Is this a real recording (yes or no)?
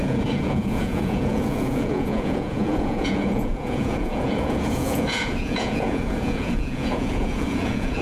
no